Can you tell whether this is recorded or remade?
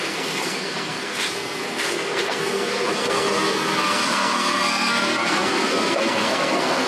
remade